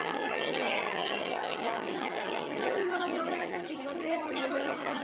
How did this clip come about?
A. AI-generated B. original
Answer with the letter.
A